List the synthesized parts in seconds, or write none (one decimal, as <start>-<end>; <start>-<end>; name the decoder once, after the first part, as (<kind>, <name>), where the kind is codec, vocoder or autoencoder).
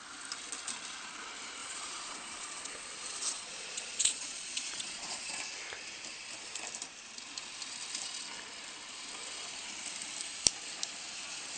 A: 1.6-5.4 (vocoder, Vocos)